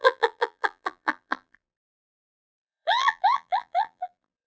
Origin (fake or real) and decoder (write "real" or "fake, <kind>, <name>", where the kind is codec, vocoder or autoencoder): fake, vocoder, BigVGAN v2